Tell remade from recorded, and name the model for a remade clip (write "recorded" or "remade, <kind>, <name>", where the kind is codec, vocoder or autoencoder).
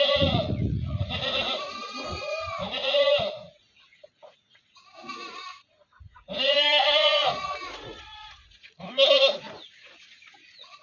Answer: remade, vocoder, Vocos